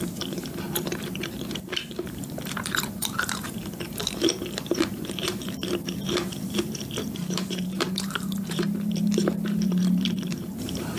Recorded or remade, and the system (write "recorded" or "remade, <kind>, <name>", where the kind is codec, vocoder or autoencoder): remade, vocoder, BigVGAN v2